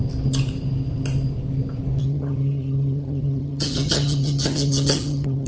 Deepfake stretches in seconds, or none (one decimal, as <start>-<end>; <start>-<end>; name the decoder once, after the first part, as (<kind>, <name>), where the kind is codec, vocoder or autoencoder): 2.0-5.5 (vocoder, HiFi-GAN)